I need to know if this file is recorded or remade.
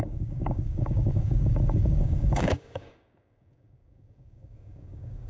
remade